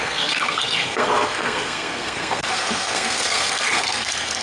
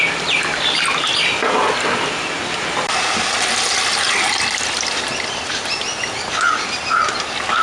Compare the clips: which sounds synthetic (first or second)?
first